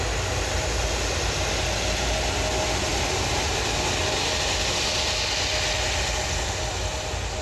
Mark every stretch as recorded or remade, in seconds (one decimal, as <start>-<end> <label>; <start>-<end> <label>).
0.0-7.4 recorded